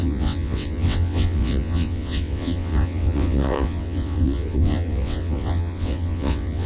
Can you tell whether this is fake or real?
fake